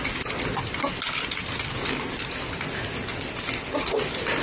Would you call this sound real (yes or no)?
yes